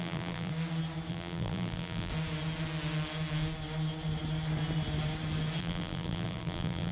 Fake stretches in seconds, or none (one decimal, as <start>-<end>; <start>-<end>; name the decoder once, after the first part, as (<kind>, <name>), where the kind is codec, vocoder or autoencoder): 0.0-0.5 (vocoder, BigVGAN v2); 1.1-2.1; 5.6-6.9